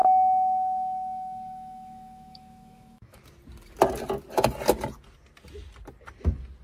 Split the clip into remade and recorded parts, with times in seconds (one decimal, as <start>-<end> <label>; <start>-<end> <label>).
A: 0.0-3.2 remade; 3.2-6.6 recorded